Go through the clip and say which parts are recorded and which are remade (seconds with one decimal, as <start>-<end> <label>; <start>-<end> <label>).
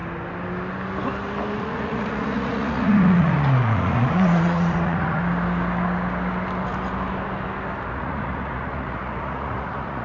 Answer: 0.0-1.6 recorded; 1.6-5.2 remade; 5.2-7.9 recorded; 7.9-10.0 remade